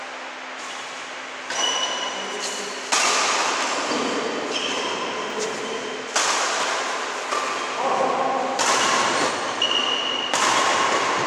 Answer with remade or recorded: recorded